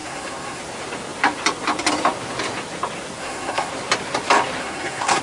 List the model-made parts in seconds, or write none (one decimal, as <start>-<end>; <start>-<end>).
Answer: 0.0-0.6; 3.2-3.7; 4.6-5.2